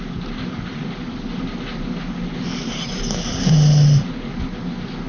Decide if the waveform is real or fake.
real